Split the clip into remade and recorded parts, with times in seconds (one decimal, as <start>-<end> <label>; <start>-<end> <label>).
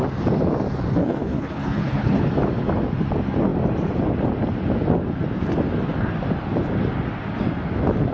0.0-1.0 recorded; 1.0-2.2 remade; 2.2-8.1 recorded